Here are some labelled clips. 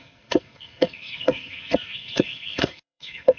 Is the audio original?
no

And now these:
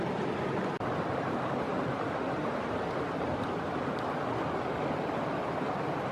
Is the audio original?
yes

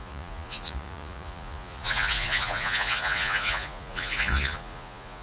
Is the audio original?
no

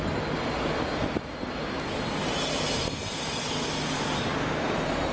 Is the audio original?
yes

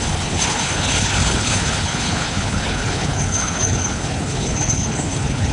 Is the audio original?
no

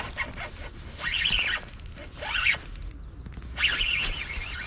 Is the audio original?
yes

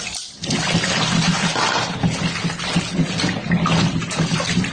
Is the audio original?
yes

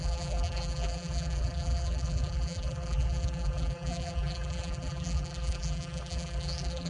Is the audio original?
no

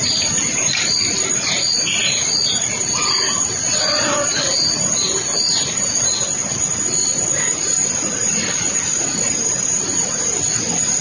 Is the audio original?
yes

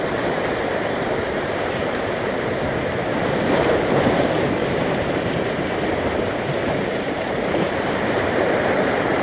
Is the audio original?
no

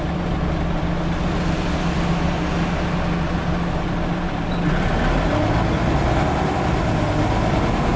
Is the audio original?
yes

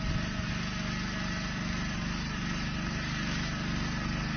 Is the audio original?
yes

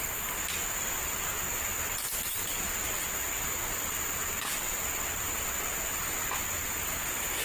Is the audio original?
yes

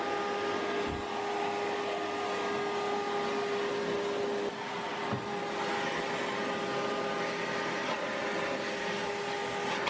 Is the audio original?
yes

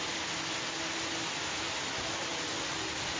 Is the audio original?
yes